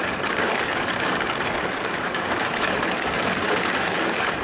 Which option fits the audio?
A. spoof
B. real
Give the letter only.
A